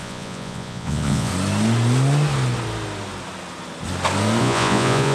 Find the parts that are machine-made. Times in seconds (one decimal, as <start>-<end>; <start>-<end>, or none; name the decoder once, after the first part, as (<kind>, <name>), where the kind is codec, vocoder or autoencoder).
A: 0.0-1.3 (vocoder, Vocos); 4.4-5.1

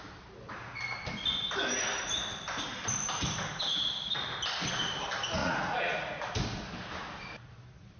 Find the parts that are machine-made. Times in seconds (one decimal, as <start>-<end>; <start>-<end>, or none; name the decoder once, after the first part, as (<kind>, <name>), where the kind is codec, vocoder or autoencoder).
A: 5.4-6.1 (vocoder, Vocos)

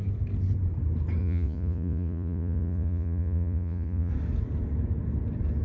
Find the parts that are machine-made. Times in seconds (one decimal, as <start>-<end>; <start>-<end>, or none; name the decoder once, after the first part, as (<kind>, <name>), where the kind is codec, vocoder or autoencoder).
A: 1.2-4.1 (vocoder, Vocos)